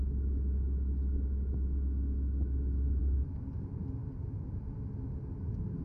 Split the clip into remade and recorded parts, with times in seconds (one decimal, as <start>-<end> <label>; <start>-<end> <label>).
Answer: 0.0-5.8 recorded